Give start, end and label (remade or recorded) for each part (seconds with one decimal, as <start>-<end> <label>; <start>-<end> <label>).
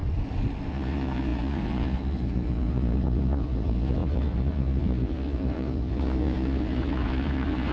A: 0.0-0.7 recorded; 0.7-7.7 remade